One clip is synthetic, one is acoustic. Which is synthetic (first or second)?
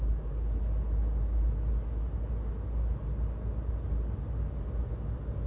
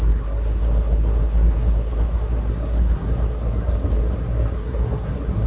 second